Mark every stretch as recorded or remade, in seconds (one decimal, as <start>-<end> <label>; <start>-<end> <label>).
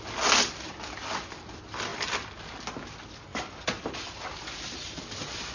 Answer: 0.0-5.5 recorded